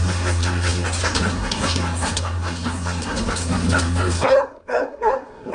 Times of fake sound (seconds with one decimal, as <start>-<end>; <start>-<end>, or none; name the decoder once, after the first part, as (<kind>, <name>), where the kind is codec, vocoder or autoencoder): 0.0-5.5 (codec, SNAC)